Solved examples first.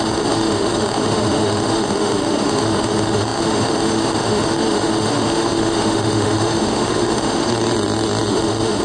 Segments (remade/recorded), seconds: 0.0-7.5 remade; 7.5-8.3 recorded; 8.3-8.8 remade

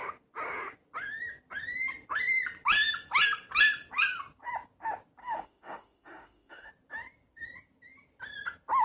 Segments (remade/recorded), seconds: 0.0-5.2 recorded; 5.2-6.7 remade; 6.7-8.8 recorded

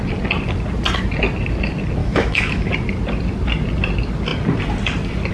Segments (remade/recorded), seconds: 0.0-2.0 recorded; 2.0-2.7 remade; 2.7-5.3 recorded